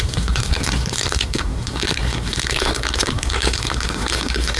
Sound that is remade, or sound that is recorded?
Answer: remade